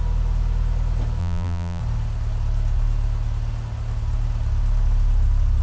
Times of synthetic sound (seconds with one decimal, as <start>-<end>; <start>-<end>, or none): 1.2-1.8